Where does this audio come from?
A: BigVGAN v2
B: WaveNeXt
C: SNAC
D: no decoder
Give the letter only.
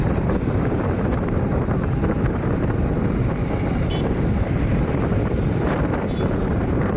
A